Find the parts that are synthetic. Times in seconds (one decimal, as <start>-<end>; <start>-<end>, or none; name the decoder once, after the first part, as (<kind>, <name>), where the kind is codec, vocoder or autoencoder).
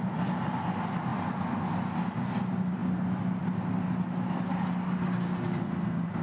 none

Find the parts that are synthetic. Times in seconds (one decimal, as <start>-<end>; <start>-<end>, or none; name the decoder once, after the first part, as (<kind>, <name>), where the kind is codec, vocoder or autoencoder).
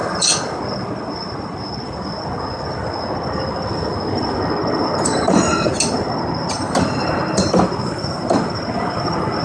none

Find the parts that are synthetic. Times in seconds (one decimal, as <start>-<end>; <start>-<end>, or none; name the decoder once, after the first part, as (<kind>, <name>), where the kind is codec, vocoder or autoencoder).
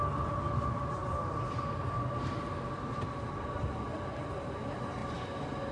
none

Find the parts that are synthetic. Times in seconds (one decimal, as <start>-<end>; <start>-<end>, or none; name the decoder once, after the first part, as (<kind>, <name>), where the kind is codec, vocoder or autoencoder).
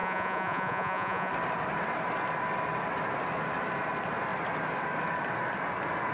0.0-1.3 (vocoder, Vocos)